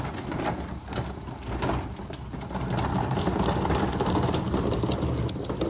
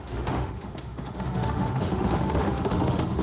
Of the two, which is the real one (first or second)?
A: first